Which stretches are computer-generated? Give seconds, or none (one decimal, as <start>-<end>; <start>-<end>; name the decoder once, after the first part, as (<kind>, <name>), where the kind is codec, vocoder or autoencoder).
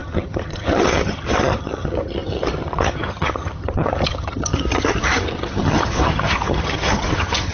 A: 0.0-7.5 (vocoder, HiFi-GAN)